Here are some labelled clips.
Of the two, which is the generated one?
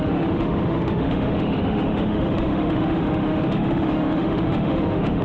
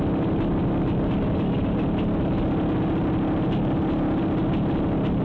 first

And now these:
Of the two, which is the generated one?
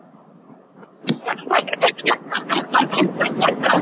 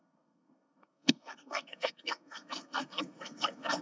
second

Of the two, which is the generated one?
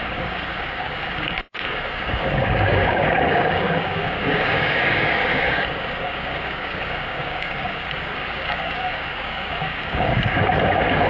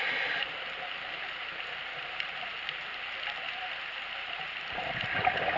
first